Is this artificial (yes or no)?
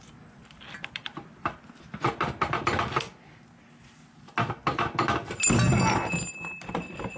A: no